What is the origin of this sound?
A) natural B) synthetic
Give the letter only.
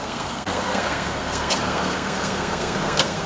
B